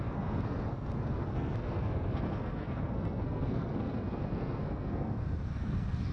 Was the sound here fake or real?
fake